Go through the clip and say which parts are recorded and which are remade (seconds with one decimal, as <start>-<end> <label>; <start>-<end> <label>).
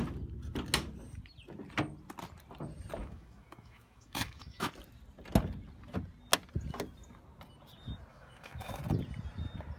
0.0-3.0 recorded; 3.0-4.7 remade; 4.7-8.1 recorded; 8.1-8.8 remade; 8.8-9.8 recorded